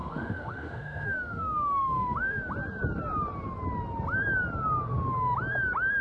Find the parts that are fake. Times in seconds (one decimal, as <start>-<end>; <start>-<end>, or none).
0.0-2.5